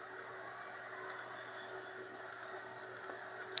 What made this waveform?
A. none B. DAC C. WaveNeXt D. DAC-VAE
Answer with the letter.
A